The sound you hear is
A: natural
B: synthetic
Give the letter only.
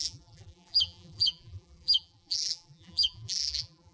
B